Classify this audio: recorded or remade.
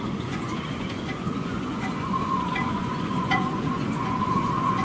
remade